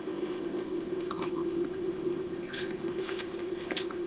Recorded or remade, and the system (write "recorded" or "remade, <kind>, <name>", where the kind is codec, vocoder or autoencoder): remade, codec, ZipCodec